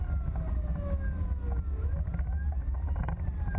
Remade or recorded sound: recorded